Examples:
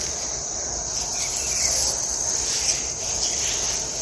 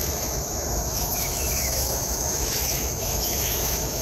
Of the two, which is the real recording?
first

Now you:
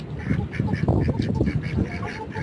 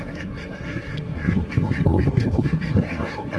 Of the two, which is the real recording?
first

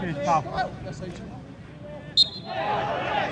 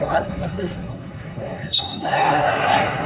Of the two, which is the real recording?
first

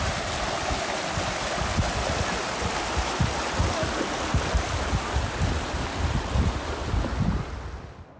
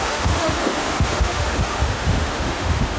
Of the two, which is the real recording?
first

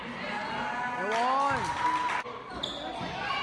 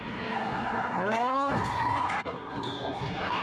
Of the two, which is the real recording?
first